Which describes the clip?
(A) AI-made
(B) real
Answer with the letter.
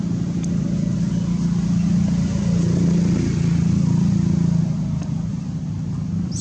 B